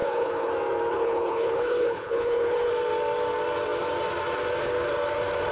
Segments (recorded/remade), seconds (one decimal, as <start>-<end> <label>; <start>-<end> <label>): 0.0-0.5 remade; 0.5-0.9 recorded; 0.9-2.7 remade; 2.7-5.5 recorded